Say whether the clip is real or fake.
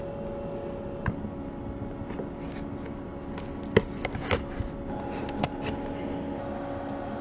real